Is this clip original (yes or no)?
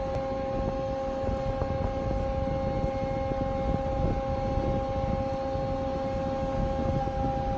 yes